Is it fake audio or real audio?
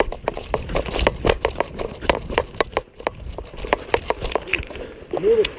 real